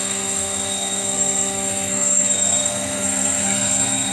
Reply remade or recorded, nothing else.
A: remade